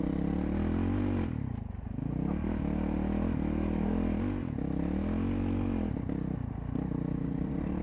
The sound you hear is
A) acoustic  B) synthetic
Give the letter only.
A